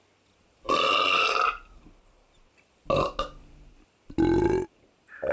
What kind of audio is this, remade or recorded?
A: recorded